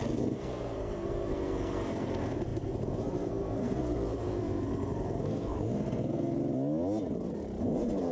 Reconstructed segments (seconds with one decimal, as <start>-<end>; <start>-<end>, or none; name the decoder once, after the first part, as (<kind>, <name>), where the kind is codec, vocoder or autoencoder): 0.0-6.4 (codec, SNAC); 7.6-8.1